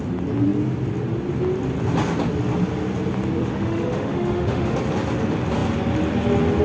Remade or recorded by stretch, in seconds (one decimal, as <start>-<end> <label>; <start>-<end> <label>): 0.0-3.4 recorded; 3.4-4.8 remade; 4.8-6.6 recorded